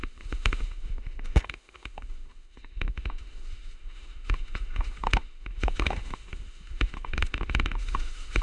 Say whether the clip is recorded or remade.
remade